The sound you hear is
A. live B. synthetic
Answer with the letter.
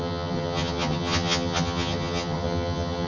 B